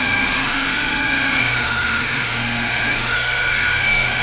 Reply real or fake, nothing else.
fake